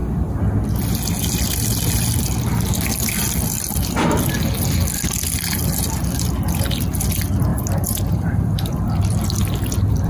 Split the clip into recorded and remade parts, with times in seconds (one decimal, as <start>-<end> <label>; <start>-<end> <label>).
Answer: 0.0-7.5 recorded; 7.5-8.5 remade; 8.5-10.1 recorded